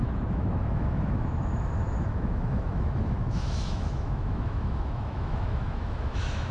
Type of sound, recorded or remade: remade